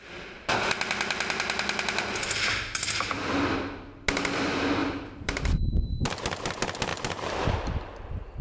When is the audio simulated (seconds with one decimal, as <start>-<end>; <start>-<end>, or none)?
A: 4.8-6.5; 6.9-8.4